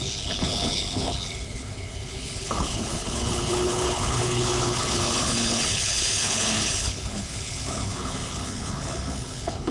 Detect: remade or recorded remade